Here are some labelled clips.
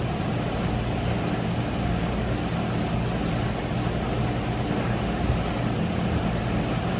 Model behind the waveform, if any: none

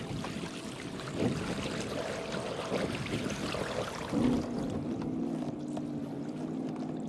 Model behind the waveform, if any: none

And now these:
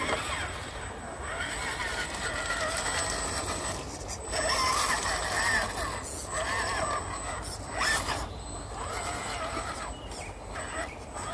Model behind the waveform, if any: none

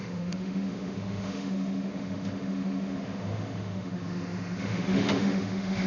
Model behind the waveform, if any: autoencoder, DAC-VAE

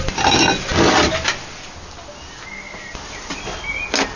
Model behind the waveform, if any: none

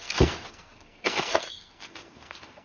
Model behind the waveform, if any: codec, SNAC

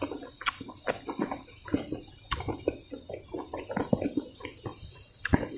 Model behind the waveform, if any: none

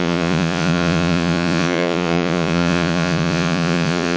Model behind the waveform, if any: vocoder, Vocos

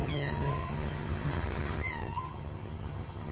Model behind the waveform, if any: vocoder, HiFi-GAN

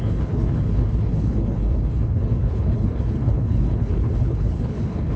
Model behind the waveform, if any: codec, HILCodec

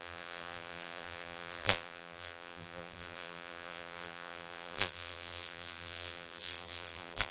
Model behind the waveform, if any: vocoder, BigVGAN v2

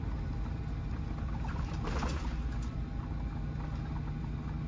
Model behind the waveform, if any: none